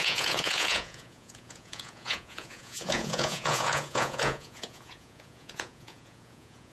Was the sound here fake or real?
fake